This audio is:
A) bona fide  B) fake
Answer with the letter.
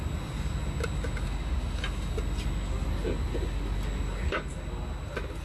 A